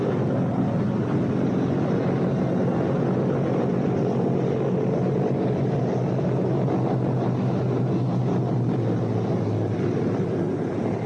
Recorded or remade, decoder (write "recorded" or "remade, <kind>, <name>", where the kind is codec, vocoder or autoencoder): recorded